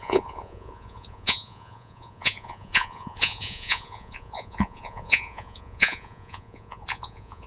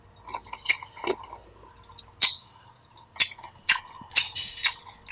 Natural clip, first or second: second